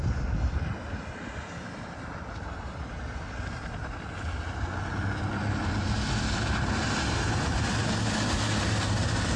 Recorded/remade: recorded